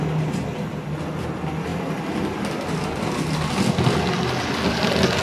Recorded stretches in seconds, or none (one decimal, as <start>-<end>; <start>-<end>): 0.0-5.2